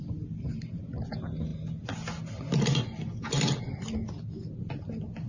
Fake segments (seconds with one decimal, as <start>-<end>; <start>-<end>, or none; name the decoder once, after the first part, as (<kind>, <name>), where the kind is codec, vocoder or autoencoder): none